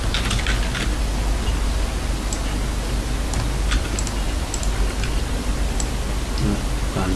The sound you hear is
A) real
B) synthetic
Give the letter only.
A